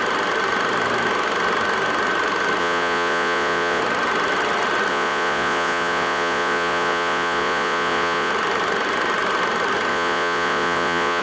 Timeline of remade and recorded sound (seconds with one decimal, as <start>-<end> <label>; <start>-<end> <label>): 0.0-2.6 recorded; 2.6-3.8 remade; 3.8-4.9 recorded; 4.9-8.3 remade; 8.3-9.9 recorded; 9.9-11.2 remade